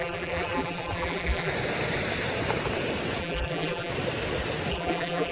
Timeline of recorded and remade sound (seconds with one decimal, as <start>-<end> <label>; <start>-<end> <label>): 0.0-1.5 remade; 1.5-3.2 recorded; 3.2-3.9 remade; 3.9-4.7 recorded; 4.7-5.3 remade